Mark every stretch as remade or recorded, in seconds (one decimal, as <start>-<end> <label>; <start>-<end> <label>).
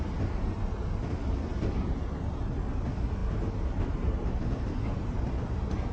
0.0-3.2 recorded; 3.2-5.3 remade; 5.3-5.9 recorded